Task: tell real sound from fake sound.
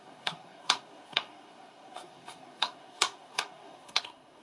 fake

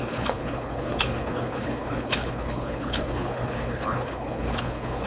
fake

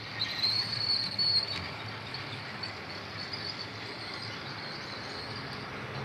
real